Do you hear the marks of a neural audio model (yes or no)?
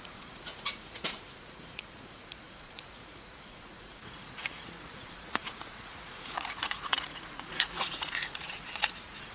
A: yes